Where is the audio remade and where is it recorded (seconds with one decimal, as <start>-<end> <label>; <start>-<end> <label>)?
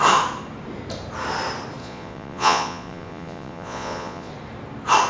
0.0-1.8 recorded; 1.8-4.3 remade; 4.3-5.1 recorded